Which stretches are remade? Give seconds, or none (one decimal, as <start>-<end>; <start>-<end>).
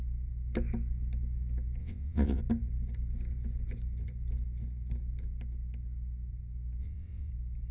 1.8-2.4; 6.8-7.3